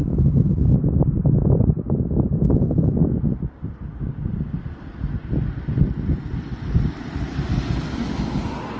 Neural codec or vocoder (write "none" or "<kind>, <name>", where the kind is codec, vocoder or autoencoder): none